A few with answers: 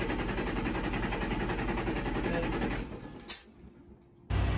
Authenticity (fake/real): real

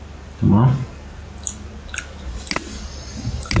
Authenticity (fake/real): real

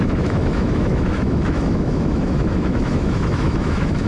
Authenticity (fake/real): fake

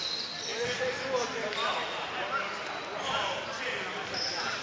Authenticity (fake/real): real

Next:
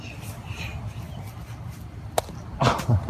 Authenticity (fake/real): real